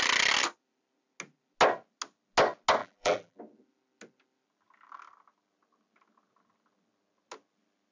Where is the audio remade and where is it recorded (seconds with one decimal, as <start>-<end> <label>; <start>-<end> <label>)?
0.0-2.8 recorded; 2.8-3.4 remade; 3.4-7.9 recorded

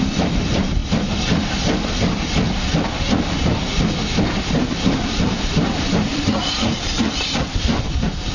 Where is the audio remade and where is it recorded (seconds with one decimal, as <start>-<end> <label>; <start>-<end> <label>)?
0.0-0.8 remade; 0.8-4.7 recorded; 4.7-8.3 remade

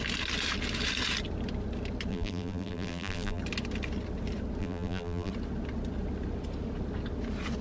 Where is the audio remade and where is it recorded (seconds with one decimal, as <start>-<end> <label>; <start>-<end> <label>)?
0.0-2.1 recorded; 2.1-3.4 remade; 3.4-4.6 recorded; 4.6-5.3 remade; 5.3-7.6 recorded

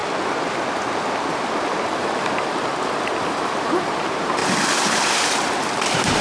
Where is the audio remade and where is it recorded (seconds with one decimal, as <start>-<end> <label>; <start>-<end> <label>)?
0.0-3.7 recorded; 3.7-4.4 remade; 4.4-5.0 recorded; 5.0-6.2 remade